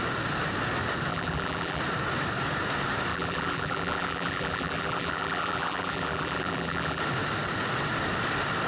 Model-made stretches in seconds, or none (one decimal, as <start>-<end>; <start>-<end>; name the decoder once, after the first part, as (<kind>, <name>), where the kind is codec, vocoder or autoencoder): 1.1-1.8 (vocoder, BigVGAN v2); 3.1-7.0